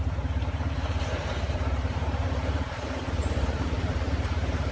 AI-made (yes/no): yes